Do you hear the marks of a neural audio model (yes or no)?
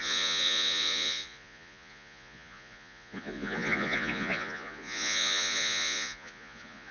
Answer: yes